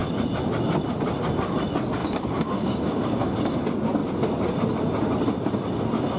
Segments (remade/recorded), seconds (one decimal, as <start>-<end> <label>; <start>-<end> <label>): 0.0-2.0 recorded; 2.0-3.5 remade; 3.5-6.2 recorded